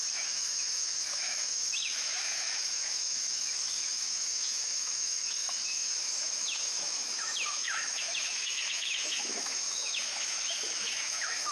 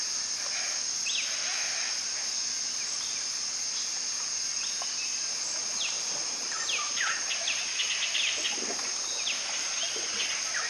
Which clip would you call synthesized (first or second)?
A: first